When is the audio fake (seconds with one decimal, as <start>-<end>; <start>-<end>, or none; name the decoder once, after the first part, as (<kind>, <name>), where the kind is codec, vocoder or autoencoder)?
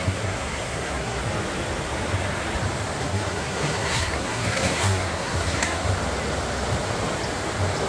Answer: 0.0-1.2 (codec, SNAC); 3.0-5.9